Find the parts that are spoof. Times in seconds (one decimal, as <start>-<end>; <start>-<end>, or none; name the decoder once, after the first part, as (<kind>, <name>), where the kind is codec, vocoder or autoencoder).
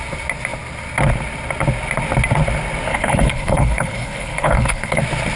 2.9-5.0 (codec, HILCodec)